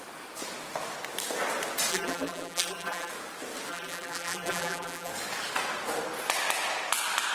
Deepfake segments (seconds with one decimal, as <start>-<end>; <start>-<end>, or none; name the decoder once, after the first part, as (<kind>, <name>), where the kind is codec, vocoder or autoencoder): 1.9-3.1 (vocoder, BigVGAN v2); 3.7-5.1